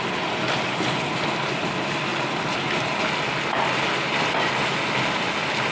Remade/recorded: recorded